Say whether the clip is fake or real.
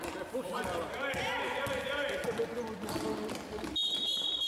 real